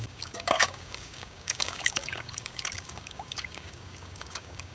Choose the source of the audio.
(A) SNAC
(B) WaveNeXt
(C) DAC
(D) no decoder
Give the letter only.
C